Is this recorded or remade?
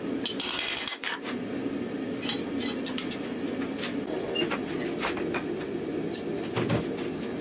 recorded